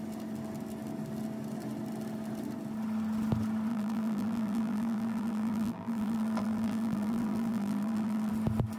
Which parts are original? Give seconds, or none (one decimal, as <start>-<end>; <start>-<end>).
0.0-3.7; 8.3-8.8